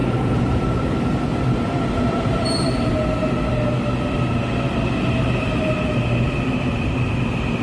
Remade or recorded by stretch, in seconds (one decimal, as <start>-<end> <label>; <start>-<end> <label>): 0.0-2.9 remade; 2.9-7.6 recorded